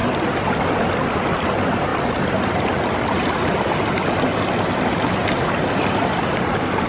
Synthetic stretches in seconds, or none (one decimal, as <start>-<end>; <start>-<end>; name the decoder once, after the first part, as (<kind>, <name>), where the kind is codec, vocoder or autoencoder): 0.8-6.9 (vocoder, BigVGAN v2)